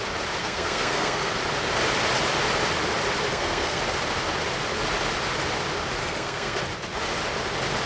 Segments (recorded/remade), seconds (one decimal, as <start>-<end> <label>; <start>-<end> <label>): 0.0-0.4 recorded; 0.4-1.3 remade; 1.3-3.3 recorded; 3.3-3.8 remade; 3.8-6.0 recorded; 6.0-6.6 remade; 6.6-7.9 recorded